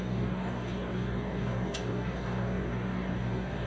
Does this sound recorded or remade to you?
remade